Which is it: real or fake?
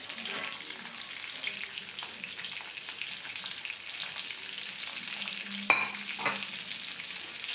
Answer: real